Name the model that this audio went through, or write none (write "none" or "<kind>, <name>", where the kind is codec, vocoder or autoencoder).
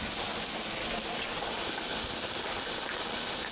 none